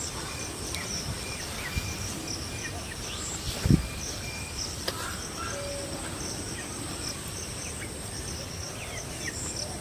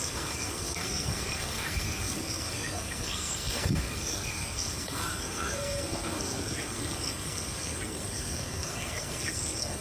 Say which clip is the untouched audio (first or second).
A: first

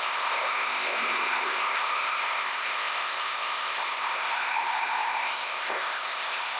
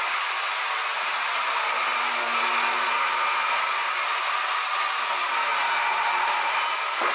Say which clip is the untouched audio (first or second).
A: second